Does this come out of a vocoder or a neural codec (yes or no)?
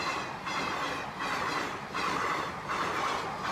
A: no